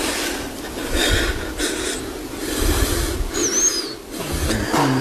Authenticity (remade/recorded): recorded